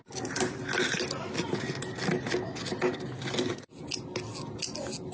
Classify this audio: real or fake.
real